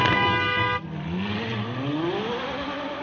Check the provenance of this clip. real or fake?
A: real